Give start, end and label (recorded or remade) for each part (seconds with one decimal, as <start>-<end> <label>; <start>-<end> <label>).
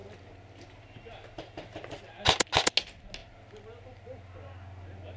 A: 0.0-5.2 recorded